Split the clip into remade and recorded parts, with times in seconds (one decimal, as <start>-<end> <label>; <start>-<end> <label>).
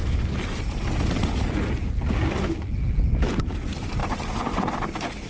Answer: 0.0-4.0 recorded; 4.0-4.7 remade; 4.7-5.3 recorded